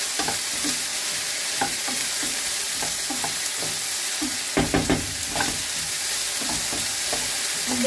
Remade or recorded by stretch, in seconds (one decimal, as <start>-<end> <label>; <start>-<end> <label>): 0.0-0.9 recorded; 0.9-3.1 remade; 3.1-7.9 recorded